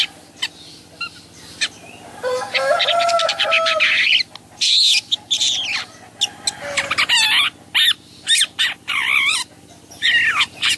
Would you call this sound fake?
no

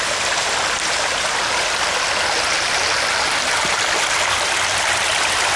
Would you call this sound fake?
no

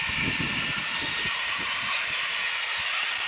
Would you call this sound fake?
no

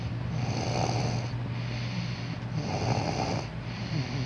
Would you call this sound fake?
no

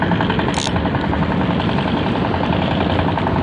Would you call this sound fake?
no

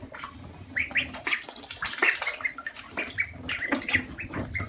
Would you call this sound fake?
no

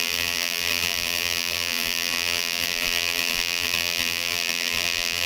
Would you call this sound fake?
yes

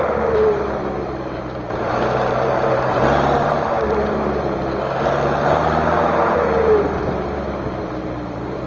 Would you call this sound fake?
yes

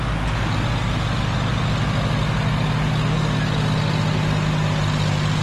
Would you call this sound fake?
no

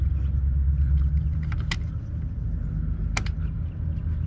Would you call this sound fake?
no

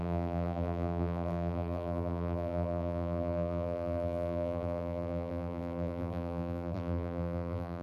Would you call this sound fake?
yes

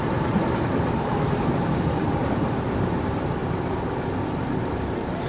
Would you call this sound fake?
yes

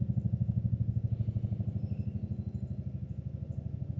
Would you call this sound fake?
no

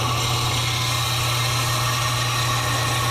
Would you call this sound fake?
no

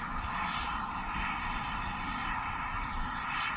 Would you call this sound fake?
yes